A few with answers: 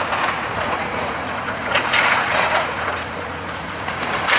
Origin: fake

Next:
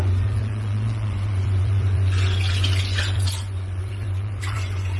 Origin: fake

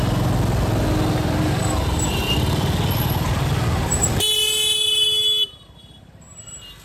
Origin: real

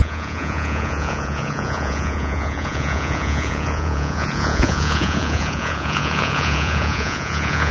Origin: fake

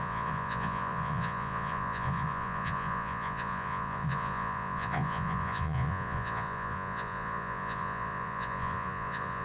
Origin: fake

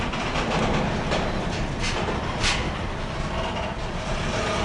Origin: real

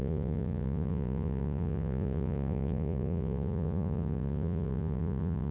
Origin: fake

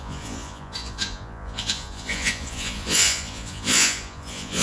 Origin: fake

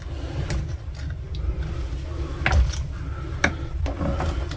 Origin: real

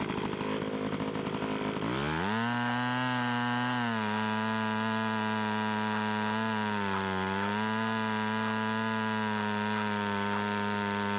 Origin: real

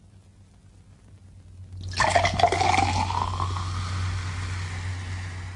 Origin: real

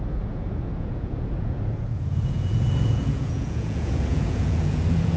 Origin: fake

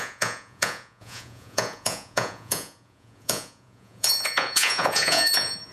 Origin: fake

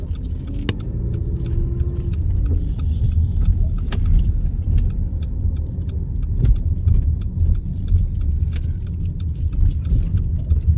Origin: real